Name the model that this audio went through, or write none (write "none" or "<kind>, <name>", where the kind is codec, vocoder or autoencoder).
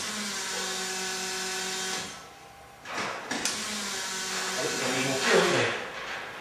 none